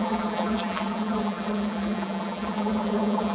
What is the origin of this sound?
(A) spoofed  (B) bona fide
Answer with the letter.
A